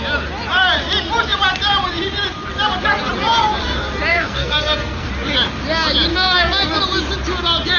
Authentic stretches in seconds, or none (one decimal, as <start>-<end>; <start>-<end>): 0.0-4.1; 5.1-6.1; 6.8-7.8